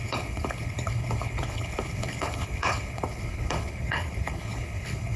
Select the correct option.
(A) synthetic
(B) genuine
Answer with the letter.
A